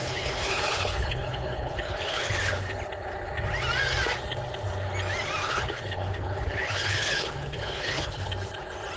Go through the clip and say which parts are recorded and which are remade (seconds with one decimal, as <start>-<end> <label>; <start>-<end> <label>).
0.0-2.7 remade; 2.7-5.4 recorded; 5.4-8.3 remade; 8.3-9.0 recorded